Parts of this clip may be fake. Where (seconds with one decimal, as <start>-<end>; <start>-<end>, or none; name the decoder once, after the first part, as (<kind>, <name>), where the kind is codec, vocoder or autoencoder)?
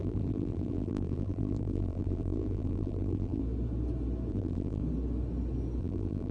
0.0-3.4 (vocoder, BigVGAN v2); 4.3-4.8; 5.8-6.3